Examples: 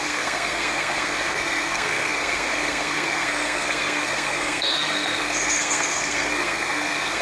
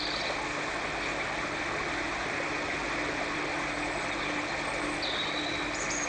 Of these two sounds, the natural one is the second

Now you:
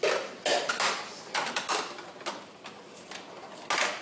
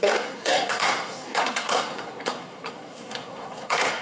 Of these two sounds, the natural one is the first